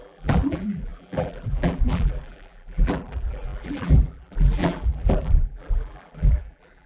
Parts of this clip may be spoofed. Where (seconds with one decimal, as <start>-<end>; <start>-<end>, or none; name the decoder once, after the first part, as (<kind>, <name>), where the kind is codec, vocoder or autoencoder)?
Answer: 0.0-6.9 (vocoder, BigVGAN v2)

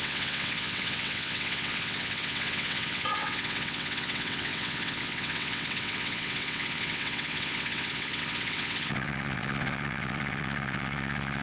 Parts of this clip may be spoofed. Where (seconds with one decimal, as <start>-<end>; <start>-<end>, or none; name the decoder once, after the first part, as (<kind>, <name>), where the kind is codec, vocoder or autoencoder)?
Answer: 0.0-11.4 (vocoder, WaveNeXt)

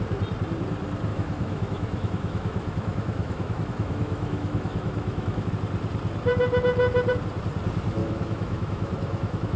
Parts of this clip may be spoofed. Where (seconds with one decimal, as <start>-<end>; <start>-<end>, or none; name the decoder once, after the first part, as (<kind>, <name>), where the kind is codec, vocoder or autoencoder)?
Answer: 1.1-5.5 (autoencoder, DAC-VAE); 8.0-9.6

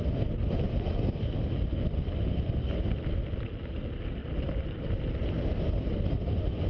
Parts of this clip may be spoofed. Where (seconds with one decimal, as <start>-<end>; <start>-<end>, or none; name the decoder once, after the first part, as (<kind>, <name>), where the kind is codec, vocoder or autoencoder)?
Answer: 4.2-5.6 (vocoder, BigVGAN v2)

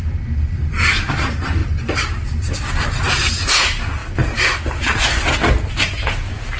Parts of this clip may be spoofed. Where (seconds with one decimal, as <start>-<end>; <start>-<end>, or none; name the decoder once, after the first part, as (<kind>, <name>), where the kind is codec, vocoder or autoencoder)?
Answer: none

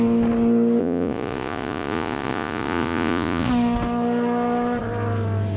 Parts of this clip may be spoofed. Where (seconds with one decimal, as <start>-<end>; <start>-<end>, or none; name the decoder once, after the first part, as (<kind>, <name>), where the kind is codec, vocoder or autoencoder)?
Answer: 0.8-3.5 (vocoder, Vocos)